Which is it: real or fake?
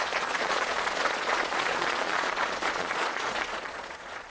fake